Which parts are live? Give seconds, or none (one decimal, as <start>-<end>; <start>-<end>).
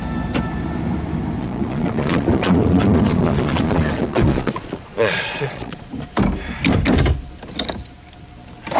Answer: 0.0-1.4; 5.9-8.8